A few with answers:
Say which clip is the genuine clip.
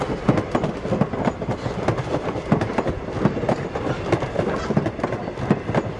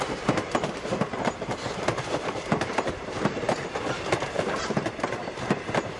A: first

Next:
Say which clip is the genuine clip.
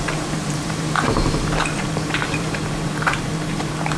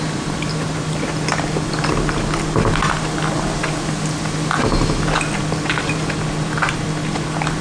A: second